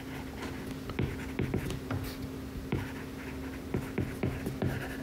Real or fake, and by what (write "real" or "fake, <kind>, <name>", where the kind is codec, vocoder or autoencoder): real